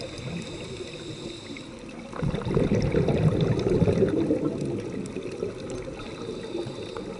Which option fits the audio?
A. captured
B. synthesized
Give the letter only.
A